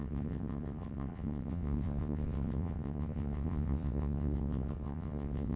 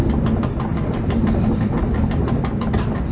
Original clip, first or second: second